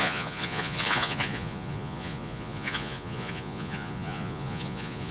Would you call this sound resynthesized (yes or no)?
yes